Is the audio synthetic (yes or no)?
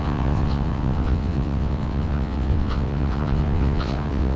yes